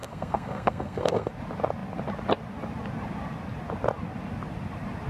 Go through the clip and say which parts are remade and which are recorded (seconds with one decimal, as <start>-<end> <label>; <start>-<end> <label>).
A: 0.0-1.3 remade; 1.3-5.1 recorded